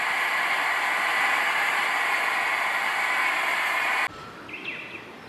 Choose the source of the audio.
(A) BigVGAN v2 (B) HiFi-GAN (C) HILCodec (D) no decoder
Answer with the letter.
D